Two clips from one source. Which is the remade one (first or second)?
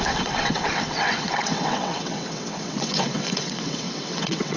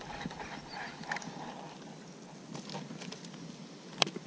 first